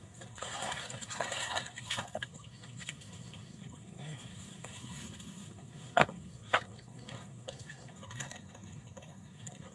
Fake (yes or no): yes